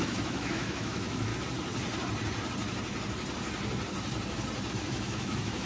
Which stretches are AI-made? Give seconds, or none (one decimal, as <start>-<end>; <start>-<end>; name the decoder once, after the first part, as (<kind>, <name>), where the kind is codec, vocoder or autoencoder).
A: 0.0-1.3 (autoencoder, DAC-VAE); 4.7-5.7